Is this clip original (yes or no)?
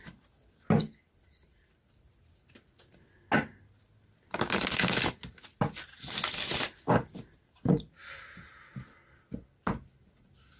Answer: yes